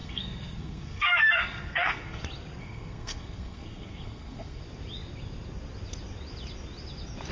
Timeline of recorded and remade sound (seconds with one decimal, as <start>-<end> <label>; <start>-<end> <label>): 0.0-2.2 remade; 2.2-2.6 recorded; 2.6-4.6 remade; 4.6-7.3 recorded